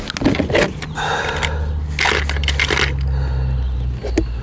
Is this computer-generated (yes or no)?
no